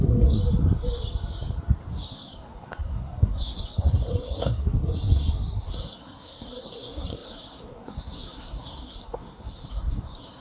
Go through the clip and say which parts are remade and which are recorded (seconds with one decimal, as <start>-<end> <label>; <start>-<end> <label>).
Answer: 0.0-0.4 remade; 0.4-1.9 recorded; 1.9-10.4 remade